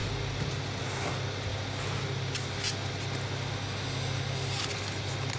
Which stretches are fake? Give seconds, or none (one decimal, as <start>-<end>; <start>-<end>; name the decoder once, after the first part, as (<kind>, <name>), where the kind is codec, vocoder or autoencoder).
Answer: none